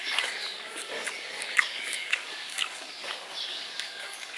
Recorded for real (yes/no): no